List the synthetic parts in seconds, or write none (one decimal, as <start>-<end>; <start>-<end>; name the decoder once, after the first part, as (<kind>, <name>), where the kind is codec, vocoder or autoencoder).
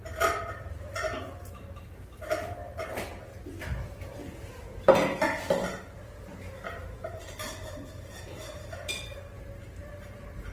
0.0-4.5 (vocoder, BigVGAN v2); 8.6-10.5